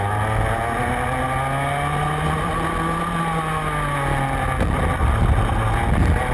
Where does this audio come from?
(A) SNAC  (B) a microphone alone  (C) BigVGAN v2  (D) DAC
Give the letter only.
B